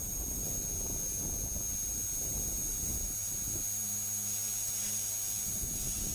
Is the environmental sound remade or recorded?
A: recorded